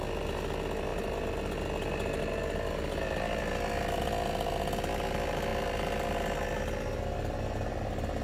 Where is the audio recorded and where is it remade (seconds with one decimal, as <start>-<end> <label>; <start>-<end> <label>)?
0.0-8.2 recorded